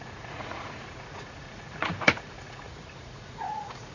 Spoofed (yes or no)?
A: yes